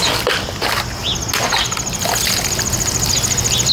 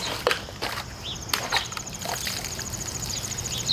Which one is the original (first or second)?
first